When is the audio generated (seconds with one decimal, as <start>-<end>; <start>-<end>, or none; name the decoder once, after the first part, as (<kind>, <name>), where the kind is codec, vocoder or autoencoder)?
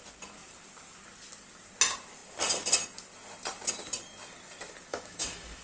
4.9-5.6 (autoencoder, DAC-VAE)